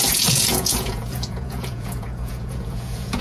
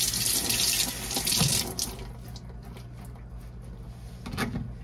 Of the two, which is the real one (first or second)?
second